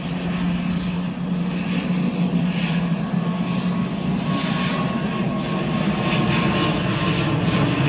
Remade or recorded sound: recorded